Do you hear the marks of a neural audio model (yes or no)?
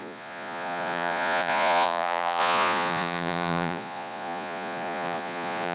yes